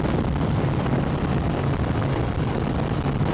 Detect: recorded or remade recorded